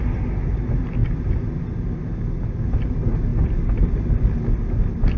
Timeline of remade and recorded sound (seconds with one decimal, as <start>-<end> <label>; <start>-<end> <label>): 0.0-5.2 recorded